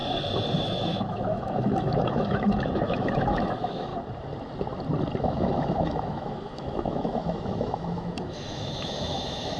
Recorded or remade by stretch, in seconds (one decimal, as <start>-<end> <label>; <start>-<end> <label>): 0.0-0.6 recorded; 0.6-3.9 remade; 3.9-5.2 recorded; 5.2-9.6 remade